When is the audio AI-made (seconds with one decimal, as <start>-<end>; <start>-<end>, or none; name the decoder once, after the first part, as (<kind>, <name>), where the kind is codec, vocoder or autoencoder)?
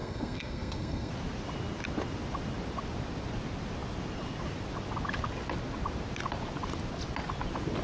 0.0-1.1 (codec, SNAC)